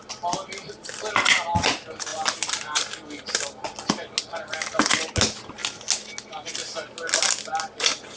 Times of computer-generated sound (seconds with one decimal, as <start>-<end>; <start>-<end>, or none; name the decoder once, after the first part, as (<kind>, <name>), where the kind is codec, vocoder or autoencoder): none